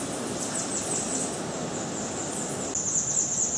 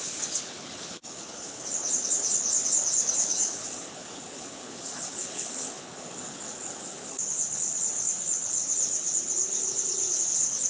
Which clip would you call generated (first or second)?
second